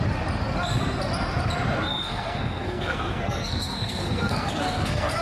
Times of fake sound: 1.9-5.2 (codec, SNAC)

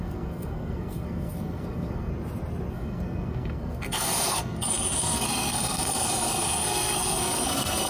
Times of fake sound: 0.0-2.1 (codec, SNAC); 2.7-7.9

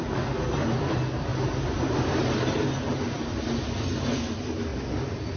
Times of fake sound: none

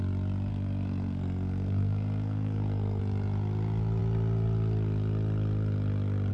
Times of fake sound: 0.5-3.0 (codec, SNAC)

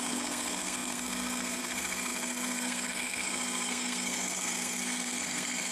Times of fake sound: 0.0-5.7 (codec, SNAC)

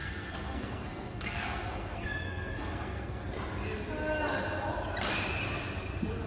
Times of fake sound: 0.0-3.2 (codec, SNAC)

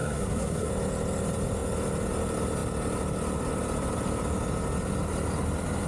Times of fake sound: 0.0-0.7 (codec, SNAC)

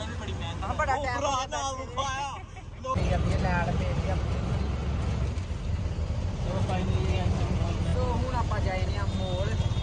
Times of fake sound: none